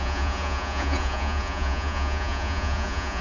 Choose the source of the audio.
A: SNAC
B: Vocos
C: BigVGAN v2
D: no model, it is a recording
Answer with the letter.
B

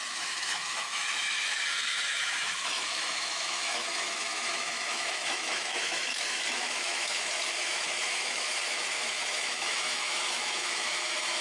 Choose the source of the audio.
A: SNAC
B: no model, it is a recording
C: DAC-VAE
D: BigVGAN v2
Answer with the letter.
C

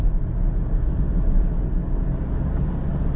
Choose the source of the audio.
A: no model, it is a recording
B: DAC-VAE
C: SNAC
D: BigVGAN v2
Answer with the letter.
A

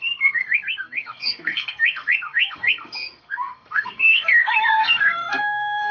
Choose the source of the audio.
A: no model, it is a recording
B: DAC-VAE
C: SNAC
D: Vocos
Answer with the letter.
C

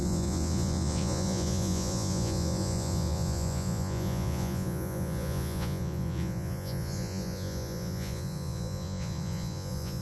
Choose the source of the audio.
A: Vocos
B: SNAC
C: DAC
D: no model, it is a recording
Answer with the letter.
A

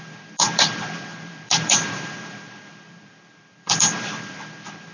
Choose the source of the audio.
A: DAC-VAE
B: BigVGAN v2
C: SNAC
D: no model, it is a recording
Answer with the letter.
B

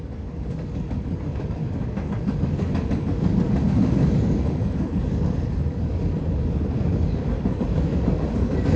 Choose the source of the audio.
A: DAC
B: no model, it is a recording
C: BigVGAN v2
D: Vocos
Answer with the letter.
A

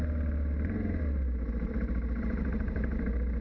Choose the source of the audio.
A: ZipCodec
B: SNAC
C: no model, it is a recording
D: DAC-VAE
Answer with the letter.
C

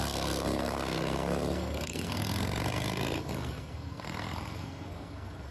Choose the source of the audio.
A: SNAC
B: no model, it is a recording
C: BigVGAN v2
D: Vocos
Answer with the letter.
A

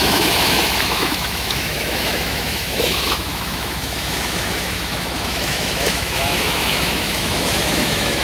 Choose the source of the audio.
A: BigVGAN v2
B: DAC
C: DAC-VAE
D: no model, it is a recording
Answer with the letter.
C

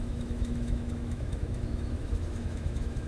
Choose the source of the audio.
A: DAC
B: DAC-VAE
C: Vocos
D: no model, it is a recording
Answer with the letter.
B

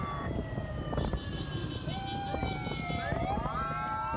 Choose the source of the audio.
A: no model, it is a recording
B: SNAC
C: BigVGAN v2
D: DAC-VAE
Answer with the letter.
A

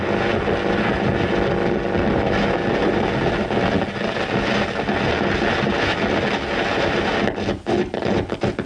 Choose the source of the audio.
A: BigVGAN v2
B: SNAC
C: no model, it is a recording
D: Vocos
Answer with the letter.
C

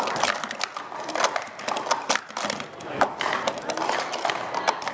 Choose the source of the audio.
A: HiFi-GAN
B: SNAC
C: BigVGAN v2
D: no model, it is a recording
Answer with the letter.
D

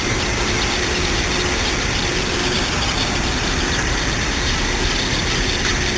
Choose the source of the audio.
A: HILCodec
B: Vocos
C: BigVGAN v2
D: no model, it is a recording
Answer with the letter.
D